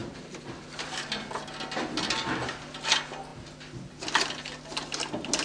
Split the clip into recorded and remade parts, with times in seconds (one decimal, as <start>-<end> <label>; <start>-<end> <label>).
0.0-1.1 remade; 1.1-5.4 recorded